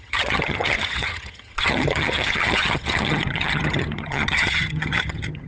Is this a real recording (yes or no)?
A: no